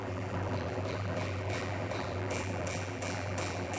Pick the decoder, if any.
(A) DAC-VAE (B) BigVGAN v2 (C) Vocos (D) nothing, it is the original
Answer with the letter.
B